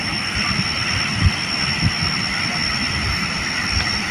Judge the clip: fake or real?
real